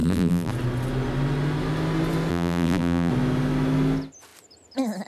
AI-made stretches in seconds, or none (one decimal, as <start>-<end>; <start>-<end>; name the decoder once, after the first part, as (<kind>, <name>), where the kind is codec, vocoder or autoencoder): 0.0-0.5 (vocoder, BigVGAN v2); 2.3-3.1